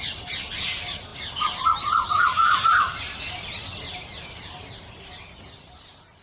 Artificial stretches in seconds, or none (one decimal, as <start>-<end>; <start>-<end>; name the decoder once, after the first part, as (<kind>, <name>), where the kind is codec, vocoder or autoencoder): none